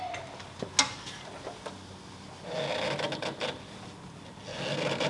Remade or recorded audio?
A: recorded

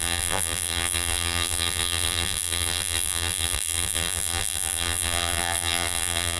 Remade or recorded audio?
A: remade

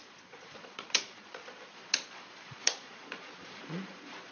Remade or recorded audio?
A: remade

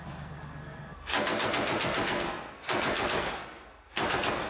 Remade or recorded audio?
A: remade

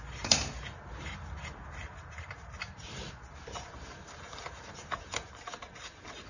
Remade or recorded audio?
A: remade